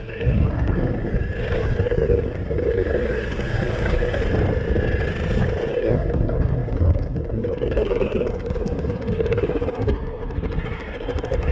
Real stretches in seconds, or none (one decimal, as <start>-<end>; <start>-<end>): 1.1-1.8; 4.2-5.7